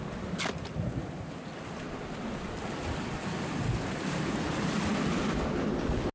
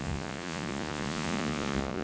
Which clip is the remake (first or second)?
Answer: second